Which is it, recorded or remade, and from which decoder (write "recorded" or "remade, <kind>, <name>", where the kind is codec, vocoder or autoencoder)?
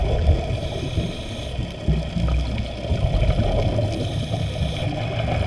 recorded